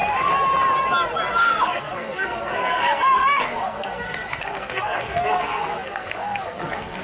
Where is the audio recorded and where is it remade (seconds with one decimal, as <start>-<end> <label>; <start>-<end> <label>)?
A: 0.0-1.3 recorded; 1.3-7.0 remade